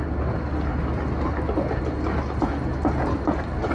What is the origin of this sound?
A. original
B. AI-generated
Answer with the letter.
A